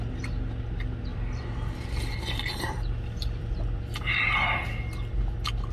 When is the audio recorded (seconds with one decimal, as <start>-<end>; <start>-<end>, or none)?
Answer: 0.0-1.1; 4.5-5.7